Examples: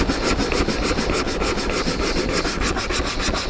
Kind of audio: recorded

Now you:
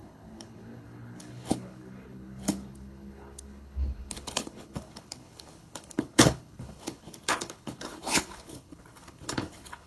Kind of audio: remade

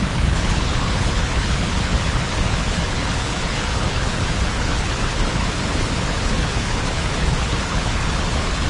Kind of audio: remade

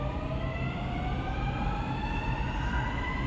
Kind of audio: recorded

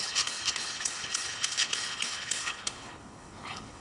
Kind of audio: remade